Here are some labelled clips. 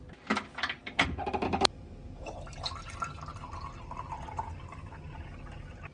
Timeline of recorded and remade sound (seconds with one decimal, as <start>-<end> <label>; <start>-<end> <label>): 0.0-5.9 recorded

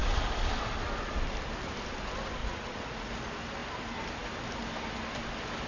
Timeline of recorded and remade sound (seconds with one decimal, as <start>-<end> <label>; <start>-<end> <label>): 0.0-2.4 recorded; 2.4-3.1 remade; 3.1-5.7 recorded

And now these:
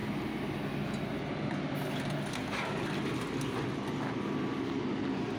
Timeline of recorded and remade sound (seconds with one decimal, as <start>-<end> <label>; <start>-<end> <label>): 0.0-5.4 recorded

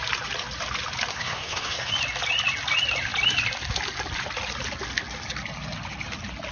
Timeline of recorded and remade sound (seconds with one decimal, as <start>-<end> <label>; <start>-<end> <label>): 0.0-1.1 recorded; 1.1-1.9 remade; 1.9-6.5 recorded

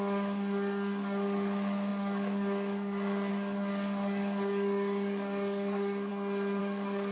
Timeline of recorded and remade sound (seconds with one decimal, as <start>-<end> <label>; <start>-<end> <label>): 0.0-6.1 remade; 6.1-6.6 recorded; 6.6-7.1 remade

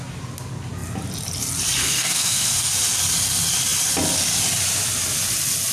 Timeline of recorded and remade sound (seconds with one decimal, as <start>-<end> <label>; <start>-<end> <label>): 0.0-1.8 recorded; 1.8-2.7 remade; 2.7-5.7 recorded

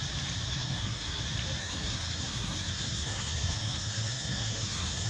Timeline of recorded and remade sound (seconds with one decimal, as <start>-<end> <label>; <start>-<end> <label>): 0.0-0.5 recorded; 0.5-1.2 remade; 1.2-1.6 recorded; 1.6-5.1 remade

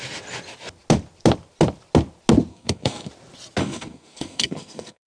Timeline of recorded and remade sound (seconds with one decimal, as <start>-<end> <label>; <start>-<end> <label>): 0.0-2.5 recorded; 2.5-3.1 remade; 3.1-3.6 recorded; 3.6-5.1 remade